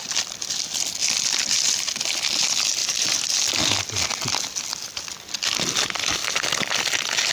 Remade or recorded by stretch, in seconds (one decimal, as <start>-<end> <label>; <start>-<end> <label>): 0.0-6.2 recorded; 6.2-7.3 remade